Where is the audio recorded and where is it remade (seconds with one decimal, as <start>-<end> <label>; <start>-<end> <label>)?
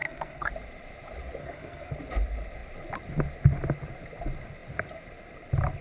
0.0-0.5 remade; 0.5-1.4 recorded; 1.4-1.9 remade; 1.9-5.8 recorded